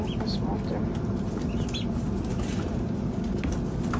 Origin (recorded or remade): recorded